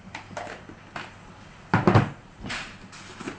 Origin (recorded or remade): recorded